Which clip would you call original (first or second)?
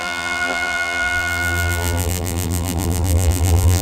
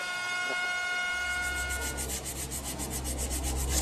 second